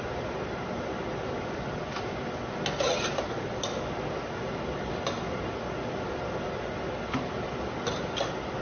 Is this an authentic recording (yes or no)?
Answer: yes